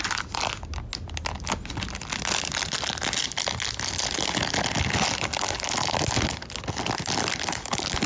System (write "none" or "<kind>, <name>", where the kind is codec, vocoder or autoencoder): none